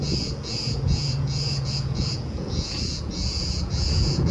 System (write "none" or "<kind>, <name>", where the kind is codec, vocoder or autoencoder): vocoder, Vocos